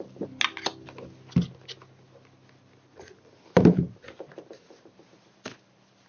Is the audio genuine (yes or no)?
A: yes